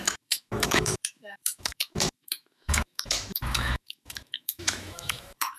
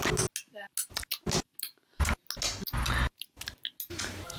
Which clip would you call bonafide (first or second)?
second